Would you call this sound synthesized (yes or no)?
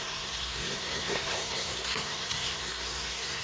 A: yes